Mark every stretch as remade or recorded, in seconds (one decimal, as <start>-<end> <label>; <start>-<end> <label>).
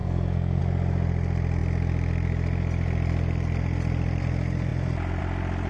0.0-0.6 remade; 0.6-5.7 recorded